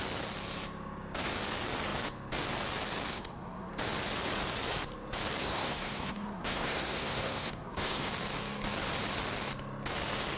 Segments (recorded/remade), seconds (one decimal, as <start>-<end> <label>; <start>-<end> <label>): 0.0-3.1 recorded; 3.1-3.7 remade; 3.7-5.4 recorded; 5.4-8.1 remade; 8.1-10.4 recorded